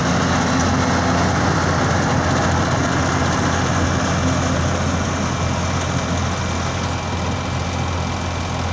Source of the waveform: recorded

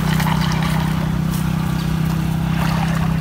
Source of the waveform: recorded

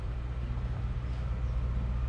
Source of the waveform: recorded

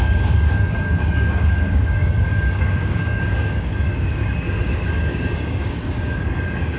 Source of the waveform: remade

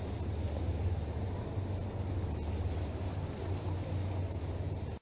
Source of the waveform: recorded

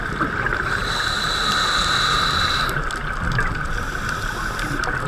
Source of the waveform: recorded